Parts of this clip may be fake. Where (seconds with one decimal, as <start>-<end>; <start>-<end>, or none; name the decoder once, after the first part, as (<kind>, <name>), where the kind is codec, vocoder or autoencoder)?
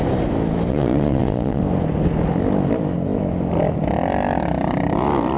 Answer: 0.7-1.6 (vocoder, Vocos)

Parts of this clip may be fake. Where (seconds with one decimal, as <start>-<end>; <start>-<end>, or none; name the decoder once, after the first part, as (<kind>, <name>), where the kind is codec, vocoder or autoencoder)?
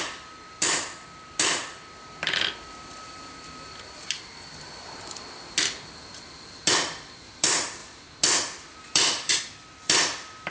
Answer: 0.0-10.5 (vocoder, BigVGAN v2)